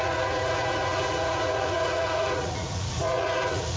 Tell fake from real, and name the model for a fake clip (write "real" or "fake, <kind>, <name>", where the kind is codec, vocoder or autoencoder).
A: fake, vocoder, Vocos